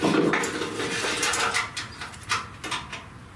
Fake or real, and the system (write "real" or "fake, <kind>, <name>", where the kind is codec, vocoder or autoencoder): real